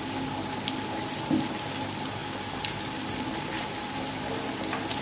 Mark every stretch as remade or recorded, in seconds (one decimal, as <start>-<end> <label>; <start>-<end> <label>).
0.0-5.0 recorded